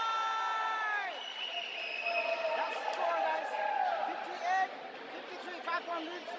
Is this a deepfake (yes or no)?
no